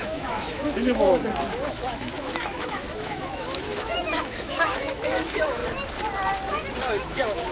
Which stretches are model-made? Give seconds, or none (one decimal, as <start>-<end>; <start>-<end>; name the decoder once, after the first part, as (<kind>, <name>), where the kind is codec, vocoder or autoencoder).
0.0-1.2 (autoencoder, DAC-VAE); 1.7-5.6; 6.9-7.5